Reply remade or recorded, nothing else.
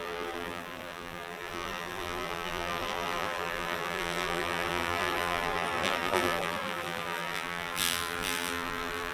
remade